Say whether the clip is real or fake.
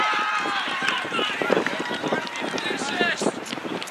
fake